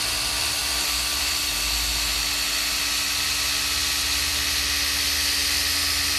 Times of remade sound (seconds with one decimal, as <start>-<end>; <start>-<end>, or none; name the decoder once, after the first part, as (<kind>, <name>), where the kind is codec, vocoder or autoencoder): none